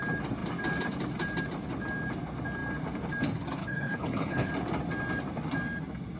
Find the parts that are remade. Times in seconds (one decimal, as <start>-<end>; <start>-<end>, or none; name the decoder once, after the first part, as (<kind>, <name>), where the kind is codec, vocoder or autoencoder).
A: 3.6-4.5 (codec, HILCodec)